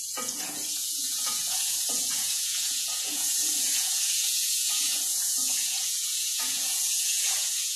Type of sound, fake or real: fake